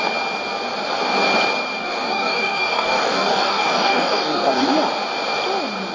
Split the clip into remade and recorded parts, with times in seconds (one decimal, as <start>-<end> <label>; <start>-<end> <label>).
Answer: 0.0-1.8 recorded; 1.8-4.7 remade; 4.7-5.9 recorded